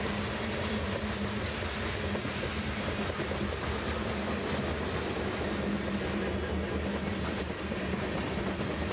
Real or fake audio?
real